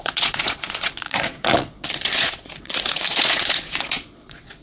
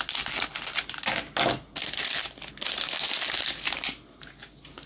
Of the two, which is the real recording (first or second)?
second